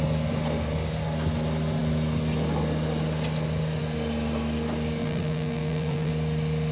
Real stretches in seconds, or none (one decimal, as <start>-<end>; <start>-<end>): 0.0-5.0; 6.1-6.7